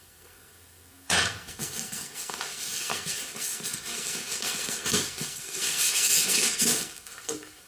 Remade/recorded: remade